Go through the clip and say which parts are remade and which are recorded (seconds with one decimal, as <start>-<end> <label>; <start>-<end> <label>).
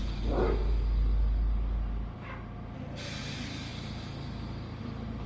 0.0-5.3 recorded